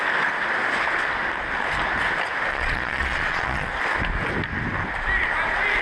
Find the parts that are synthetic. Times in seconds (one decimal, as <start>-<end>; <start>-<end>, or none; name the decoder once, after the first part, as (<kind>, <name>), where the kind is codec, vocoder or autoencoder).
2.5-3.7 (vocoder, Vocos)

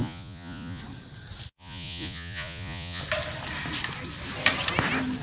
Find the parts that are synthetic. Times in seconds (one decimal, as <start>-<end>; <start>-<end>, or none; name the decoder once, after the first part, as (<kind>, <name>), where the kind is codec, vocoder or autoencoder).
0.0-0.8 (vocoder, Vocos); 1.5-3.0

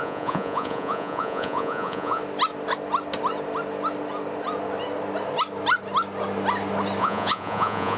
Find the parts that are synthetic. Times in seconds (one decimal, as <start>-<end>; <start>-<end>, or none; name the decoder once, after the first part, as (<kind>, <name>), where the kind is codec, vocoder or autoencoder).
0.0-2.2 (vocoder, Vocos); 7.0-8.0

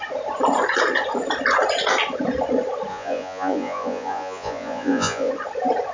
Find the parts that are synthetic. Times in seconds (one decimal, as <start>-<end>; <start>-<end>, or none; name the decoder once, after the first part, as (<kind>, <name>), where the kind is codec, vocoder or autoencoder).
2.9-5.3 (vocoder, Vocos)

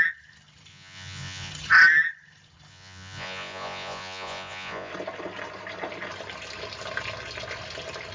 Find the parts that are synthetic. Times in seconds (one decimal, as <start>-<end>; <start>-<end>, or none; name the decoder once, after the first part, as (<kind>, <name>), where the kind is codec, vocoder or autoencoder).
0.7-1.5 (vocoder, Vocos); 2.7-4.9

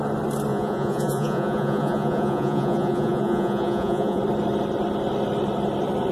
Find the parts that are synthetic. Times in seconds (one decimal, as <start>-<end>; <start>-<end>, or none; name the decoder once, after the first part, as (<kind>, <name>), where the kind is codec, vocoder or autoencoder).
0.5-4.2 (vocoder, Vocos)

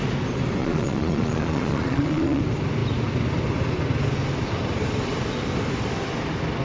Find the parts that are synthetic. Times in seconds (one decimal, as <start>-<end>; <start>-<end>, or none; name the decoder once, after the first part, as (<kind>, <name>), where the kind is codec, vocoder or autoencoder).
0.6-2.4 (vocoder, Vocos)